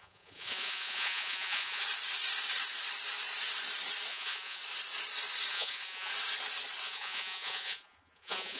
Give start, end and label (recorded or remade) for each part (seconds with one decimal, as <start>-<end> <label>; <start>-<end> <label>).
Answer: 0.0-1.8 remade; 1.8-4.1 recorded; 4.1-4.6 remade; 4.6-5.5 recorded; 5.5-6.1 remade; 6.1-6.8 recorded; 6.8-8.6 remade